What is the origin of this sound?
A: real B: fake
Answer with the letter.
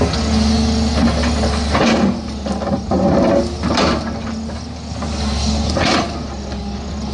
A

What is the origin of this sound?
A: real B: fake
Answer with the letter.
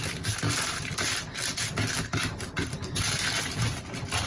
A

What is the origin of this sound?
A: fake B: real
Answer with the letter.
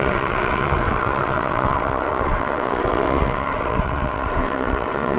A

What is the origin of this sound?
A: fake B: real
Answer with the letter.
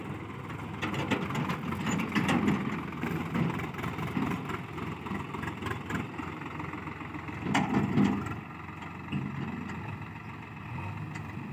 B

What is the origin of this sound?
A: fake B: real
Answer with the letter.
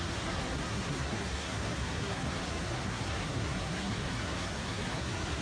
A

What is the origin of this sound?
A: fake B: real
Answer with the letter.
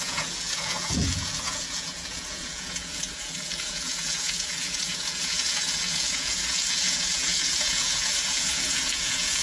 A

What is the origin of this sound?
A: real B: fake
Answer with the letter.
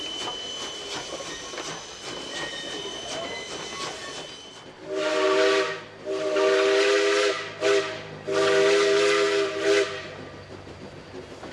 A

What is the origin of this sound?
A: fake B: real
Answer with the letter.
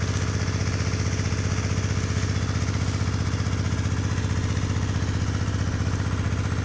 B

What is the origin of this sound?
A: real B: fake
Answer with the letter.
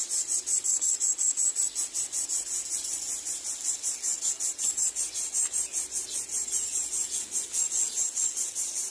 A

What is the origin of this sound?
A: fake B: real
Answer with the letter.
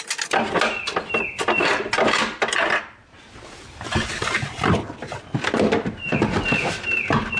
B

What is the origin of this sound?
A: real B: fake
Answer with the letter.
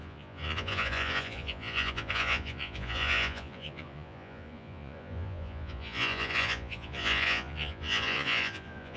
B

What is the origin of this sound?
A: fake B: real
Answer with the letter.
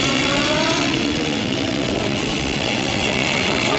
A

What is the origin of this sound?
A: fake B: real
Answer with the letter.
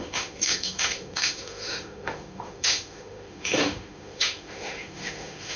A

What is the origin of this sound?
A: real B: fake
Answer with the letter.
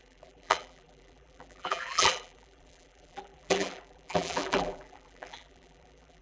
B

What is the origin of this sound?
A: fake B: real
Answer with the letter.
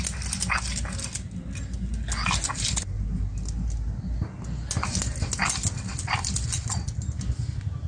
B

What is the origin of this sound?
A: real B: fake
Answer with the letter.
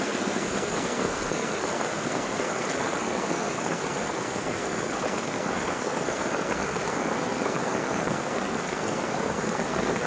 B